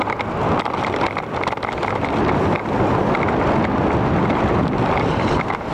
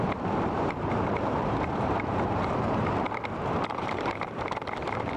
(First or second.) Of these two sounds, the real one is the first